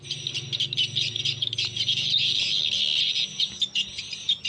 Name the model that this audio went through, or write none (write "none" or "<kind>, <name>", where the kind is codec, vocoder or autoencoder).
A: none